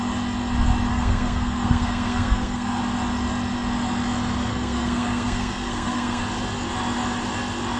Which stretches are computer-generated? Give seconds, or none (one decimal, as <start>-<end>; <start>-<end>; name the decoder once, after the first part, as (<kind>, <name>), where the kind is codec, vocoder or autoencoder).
0.9-2.8 (codec, SNAC); 4.5-6.2